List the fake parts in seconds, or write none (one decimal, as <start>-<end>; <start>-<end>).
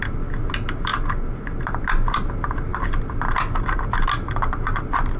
none